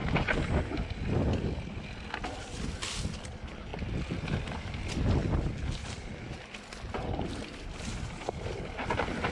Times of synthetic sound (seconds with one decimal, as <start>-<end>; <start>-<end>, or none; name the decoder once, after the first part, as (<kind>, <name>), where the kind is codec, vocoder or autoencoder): 5.2-7.3 (vocoder, BigVGAN v2)